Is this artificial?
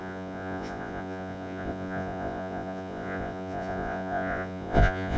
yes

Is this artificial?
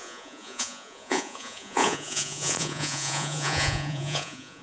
yes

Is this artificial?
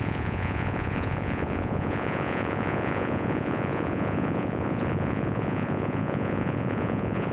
yes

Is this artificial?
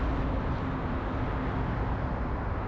no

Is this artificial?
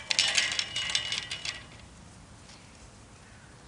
no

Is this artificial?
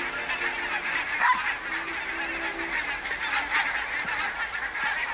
no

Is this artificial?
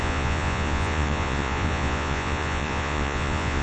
yes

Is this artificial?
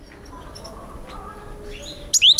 no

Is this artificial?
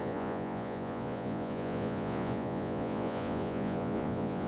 yes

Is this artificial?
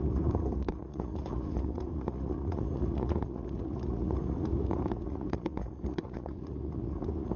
yes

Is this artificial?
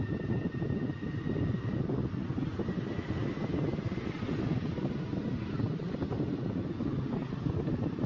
no